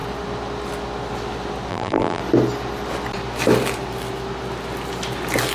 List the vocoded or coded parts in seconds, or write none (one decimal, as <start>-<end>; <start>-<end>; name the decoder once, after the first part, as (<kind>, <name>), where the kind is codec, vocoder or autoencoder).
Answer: 1.7-2.2 (vocoder, BigVGAN v2)